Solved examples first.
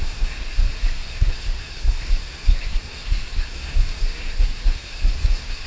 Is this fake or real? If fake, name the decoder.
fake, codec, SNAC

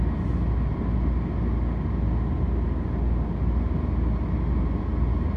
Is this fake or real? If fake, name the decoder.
real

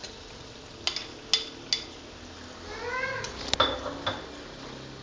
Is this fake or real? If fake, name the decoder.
real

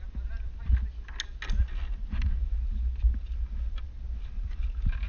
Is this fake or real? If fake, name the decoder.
real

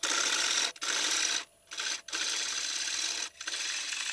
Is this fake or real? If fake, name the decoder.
real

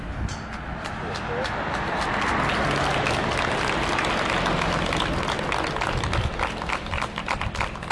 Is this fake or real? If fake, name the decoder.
real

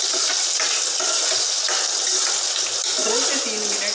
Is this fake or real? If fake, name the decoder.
real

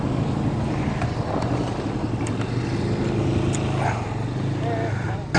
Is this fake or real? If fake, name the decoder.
real